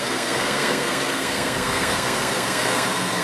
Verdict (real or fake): fake